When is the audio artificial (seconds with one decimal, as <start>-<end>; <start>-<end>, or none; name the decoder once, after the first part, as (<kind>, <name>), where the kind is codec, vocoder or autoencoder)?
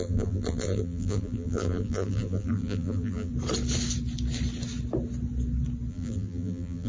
0.0-3.3 (vocoder, BigVGAN v2); 5.9-6.9